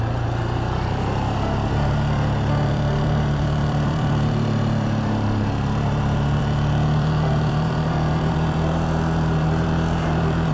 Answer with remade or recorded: remade